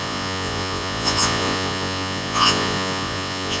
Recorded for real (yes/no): no